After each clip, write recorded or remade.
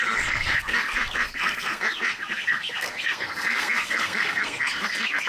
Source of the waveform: remade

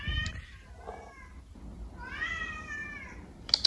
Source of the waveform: recorded